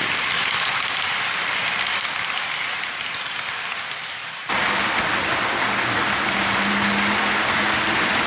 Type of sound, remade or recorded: recorded